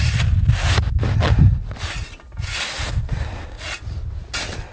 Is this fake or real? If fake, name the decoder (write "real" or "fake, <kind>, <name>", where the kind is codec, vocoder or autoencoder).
real